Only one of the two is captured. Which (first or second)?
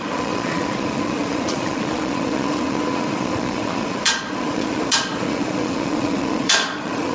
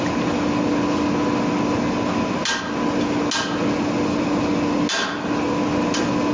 second